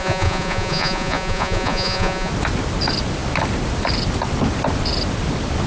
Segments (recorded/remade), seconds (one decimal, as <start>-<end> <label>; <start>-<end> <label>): 0.0-2.3 remade; 2.3-5.7 recorded